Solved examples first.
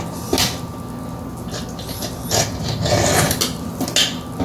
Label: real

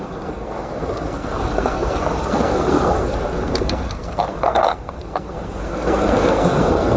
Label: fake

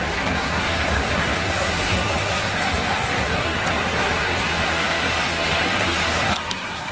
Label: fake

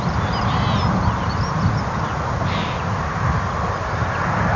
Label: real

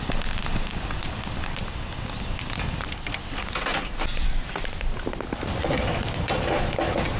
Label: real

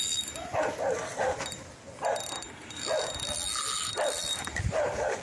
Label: real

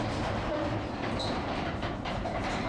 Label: fake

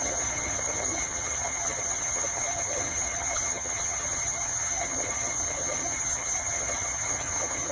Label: fake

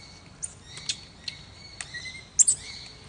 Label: real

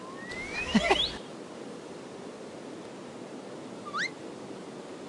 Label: real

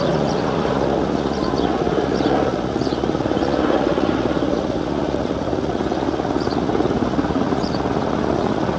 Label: fake